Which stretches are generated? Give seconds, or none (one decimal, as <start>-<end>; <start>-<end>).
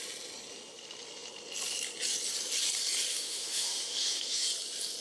3.1-4.5